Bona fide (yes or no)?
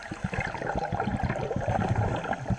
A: yes